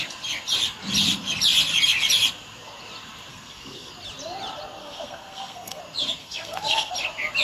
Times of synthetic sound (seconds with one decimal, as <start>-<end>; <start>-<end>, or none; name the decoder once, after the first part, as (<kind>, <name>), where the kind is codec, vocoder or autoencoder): 3.3-3.9 (codec, SNAC); 4.8-5.8; 6.2-6.9